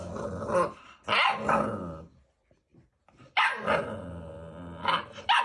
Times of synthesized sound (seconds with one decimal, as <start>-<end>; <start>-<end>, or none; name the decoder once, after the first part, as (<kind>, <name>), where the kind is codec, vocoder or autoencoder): none